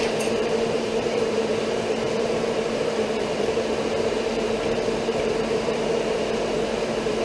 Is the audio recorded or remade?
remade